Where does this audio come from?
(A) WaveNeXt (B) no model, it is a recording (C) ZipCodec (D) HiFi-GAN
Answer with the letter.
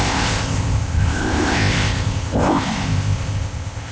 C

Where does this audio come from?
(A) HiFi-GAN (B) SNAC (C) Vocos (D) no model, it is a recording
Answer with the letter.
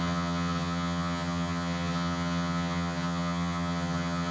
A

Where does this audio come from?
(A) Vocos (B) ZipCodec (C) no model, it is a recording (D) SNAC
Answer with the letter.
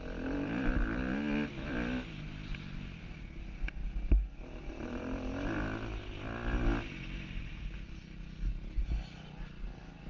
C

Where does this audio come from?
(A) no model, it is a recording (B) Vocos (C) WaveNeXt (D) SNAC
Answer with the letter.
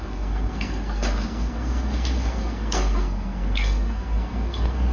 D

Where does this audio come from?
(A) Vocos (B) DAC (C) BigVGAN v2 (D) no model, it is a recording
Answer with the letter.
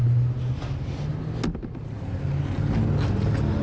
D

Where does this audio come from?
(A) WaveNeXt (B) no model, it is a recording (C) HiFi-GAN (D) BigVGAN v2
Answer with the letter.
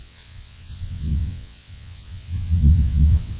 A